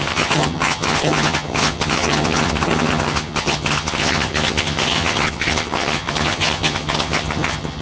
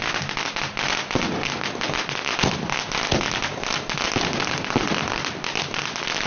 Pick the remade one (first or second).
first